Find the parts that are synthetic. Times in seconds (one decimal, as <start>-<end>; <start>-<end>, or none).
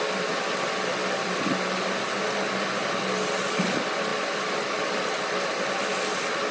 none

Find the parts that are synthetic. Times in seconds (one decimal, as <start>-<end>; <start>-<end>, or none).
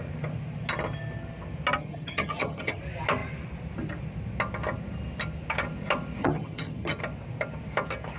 1.8-2.8; 6.2-7.0